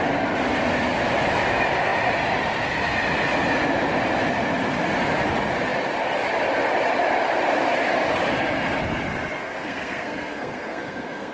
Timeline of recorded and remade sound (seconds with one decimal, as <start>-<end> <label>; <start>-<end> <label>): 0.0-9.4 recorded; 9.4-11.3 remade